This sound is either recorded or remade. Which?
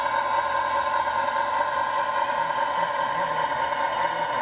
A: recorded